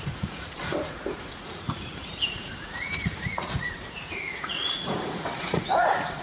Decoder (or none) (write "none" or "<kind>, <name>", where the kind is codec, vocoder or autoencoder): vocoder, Vocos